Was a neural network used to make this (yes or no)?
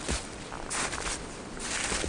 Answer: no